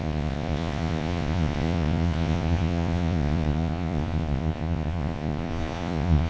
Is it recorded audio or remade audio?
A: remade